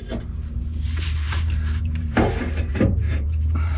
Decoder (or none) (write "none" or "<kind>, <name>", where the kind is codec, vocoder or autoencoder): vocoder, BigVGAN v2